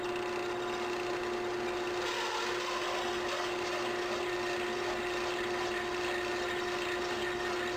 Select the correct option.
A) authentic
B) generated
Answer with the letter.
A